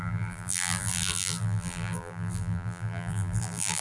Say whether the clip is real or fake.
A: fake